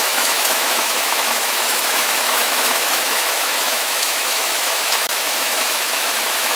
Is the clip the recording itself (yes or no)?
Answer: no